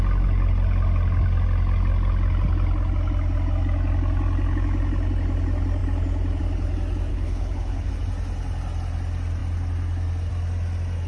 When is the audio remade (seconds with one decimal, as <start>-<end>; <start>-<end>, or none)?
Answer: 7.1-7.9